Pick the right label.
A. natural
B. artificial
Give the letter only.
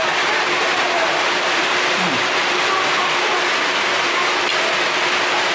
A